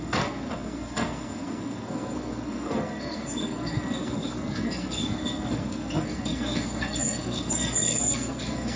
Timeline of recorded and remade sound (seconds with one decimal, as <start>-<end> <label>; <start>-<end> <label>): 0.0-8.8 remade